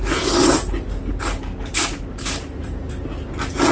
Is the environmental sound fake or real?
real